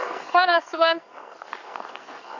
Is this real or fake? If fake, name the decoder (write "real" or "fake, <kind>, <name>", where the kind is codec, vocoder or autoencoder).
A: fake, codec, SNAC